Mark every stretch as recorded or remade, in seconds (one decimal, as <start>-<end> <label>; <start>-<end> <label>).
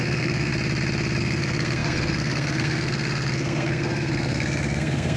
0.0-0.5 remade; 0.5-1.2 recorded; 1.2-5.2 remade